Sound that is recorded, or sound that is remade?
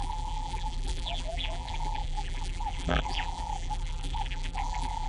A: remade